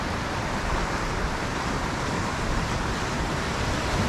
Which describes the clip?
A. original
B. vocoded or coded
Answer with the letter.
A